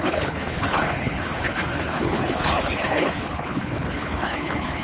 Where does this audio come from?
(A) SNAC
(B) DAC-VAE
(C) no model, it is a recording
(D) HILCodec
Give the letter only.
D